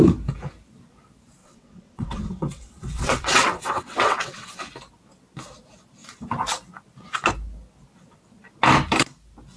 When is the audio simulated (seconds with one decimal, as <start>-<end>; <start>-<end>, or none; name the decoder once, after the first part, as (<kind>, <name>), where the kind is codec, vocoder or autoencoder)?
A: 1.4-4.6 (vocoder, WaveNeXt)